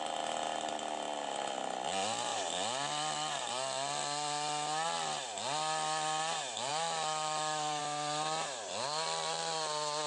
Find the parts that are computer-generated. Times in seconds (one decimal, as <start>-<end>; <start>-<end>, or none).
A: 6.7-7.8